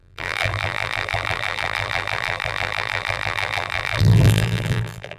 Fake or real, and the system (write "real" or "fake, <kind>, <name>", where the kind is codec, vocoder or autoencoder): fake, vocoder, BigVGAN v2